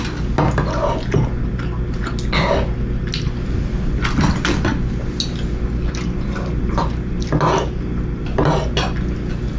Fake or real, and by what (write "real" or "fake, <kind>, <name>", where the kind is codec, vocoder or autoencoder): real